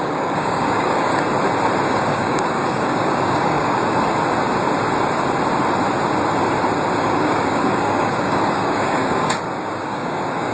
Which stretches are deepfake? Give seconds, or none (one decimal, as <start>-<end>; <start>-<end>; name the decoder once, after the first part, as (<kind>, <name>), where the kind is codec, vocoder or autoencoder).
0.0-1.1 (codec, DAC); 1.9-3.8; 7.0-10.5